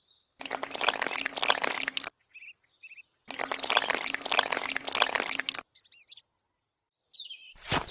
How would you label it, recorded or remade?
recorded